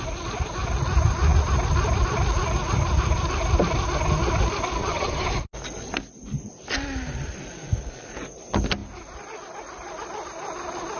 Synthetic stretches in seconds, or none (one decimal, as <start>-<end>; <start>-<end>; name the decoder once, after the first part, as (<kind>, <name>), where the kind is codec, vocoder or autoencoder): 4.8-5.3 (vocoder, HiFi-GAN)